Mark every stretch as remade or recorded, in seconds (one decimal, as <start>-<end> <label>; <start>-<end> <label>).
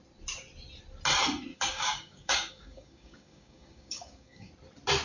0.0-1.5 recorded; 1.5-4.5 remade; 4.5-5.0 recorded